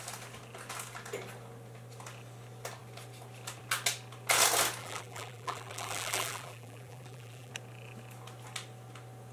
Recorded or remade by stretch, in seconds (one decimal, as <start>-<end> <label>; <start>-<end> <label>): 0.0-4.8 recorded; 4.8-7.5 remade; 7.5-9.3 recorded